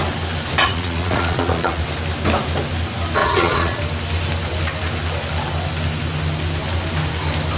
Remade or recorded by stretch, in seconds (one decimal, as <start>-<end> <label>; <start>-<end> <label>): 0.0-0.6 recorded; 0.6-1.8 remade; 1.8-3.2 recorded; 3.2-3.8 remade; 3.8-7.6 recorded